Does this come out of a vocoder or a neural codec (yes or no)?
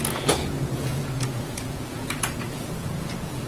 yes